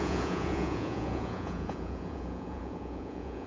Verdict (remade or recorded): remade